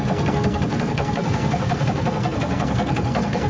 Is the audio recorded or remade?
remade